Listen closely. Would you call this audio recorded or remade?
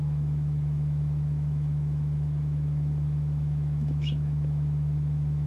remade